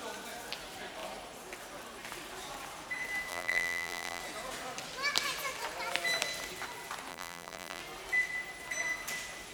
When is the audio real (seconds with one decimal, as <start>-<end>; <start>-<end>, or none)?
0.0-3.3; 4.2-7.1; 7.8-9.5